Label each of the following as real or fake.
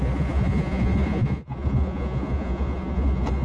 fake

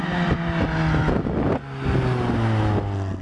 real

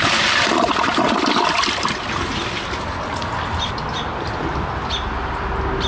real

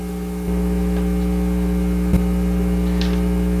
real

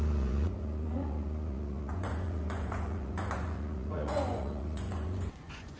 fake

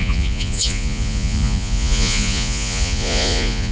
fake